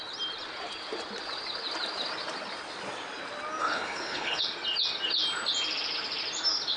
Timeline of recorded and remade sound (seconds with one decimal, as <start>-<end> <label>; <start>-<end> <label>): 0.0-3.6 recorded; 3.6-4.4 remade; 4.4-6.8 recorded

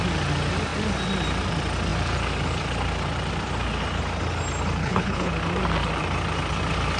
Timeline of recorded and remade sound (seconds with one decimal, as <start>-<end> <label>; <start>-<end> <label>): 0.0-4.8 recorded; 4.8-5.3 remade; 5.3-7.0 recorded

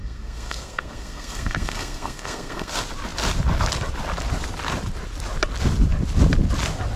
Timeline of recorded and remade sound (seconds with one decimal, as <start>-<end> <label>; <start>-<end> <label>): 0.0-2.7 remade; 2.7-7.0 recorded

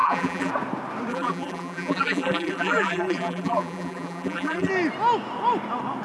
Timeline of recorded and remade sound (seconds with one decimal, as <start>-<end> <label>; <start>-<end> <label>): 0.0-0.5 remade; 0.5-1.1 recorded; 1.1-4.7 remade; 4.7-6.0 recorded

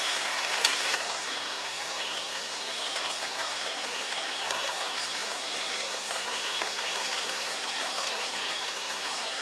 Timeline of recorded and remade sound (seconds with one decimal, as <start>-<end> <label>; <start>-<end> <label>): 0.0-9.4 remade

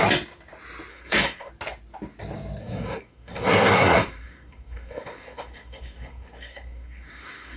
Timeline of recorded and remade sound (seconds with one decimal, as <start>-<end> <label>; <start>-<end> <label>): 0.0-0.9 recorded; 0.9-1.5 remade; 1.5-2.6 recorded; 2.6-7.6 remade

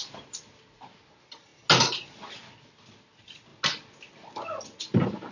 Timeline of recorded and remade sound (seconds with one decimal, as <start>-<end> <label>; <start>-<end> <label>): 0.0-5.3 recorded